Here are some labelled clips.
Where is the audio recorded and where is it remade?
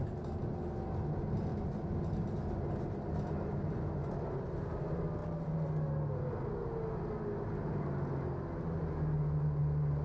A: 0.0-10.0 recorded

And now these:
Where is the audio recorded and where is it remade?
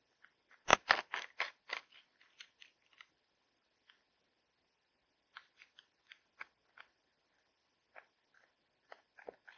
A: 0.0-9.6 recorded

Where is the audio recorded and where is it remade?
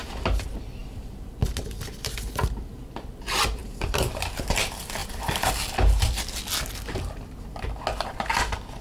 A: 0.0-3.6 recorded; 3.6-4.5 remade; 4.5-5.0 recorded; 5.0-5.5 remade; 5.5-8.8 recorded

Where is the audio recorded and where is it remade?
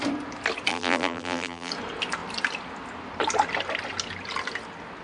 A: 0.0-0.7 recorded; 0.7-1.7 remade; 1.7-5.0 recorded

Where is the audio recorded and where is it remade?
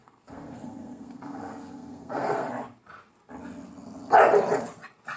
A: 0.0-2.5 remade; 2.5-5.2 recorded